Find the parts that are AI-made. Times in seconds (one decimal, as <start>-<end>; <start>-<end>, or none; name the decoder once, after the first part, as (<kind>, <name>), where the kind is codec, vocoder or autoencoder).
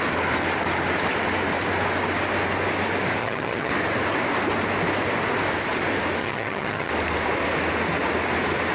3.2-3.7 (vocoder, HiFi-GAN); 6.2-6.9